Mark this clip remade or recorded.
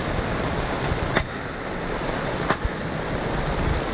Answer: recorded